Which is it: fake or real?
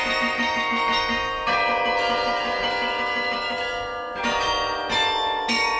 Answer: fake